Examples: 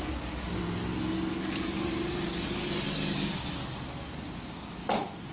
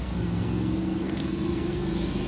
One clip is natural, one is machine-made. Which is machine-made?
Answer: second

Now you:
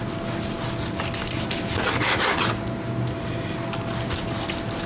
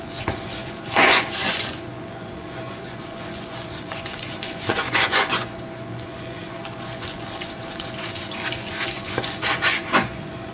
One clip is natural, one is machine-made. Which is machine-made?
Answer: second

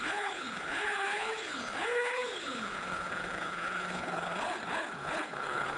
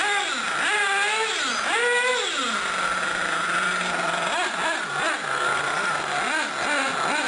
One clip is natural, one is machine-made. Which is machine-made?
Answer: first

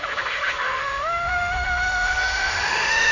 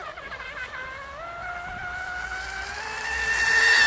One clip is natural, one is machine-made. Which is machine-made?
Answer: first